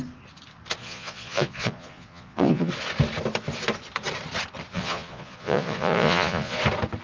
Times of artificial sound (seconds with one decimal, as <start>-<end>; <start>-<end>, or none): 0.8-2.7; 4.7-6.6

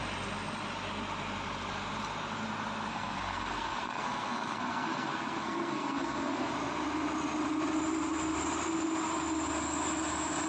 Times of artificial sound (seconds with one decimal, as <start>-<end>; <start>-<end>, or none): 2.9-6.5

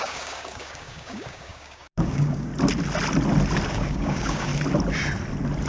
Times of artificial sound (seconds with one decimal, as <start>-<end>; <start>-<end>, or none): 0.0-2.5; 3.7-4.5